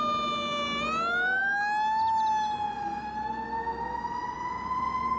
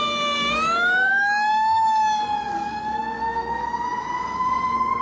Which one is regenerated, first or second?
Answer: second